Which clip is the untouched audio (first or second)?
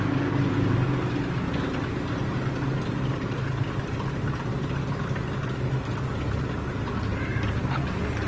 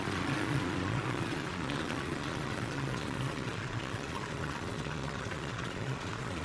first